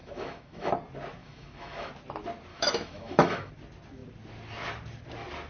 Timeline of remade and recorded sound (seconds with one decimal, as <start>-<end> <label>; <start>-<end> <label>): 0.0-0.7 remade; 0.7-1.2 recorded; 1.2-1.9 remade; 1.9-2.5 recorded; 2.5-3.5 remade; 3.5-5.5 recorded